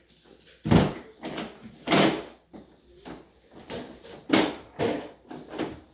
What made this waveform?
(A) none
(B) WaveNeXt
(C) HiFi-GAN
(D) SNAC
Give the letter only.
A